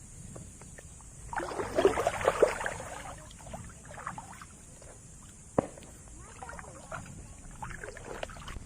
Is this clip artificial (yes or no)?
no